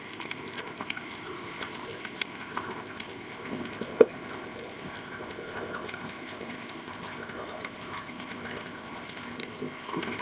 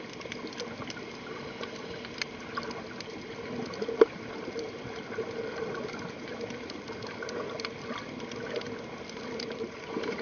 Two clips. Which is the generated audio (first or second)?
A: first